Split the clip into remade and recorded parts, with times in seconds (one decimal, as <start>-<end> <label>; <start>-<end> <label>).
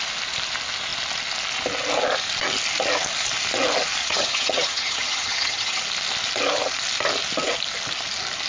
0.0-4.0 recorded; 4.0-5.8 remade; 5.8-8.5 recorded